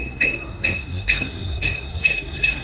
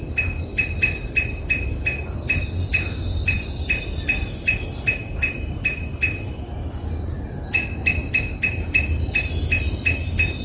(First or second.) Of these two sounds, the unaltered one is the second